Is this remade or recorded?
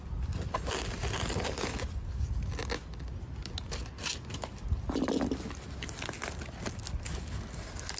recorded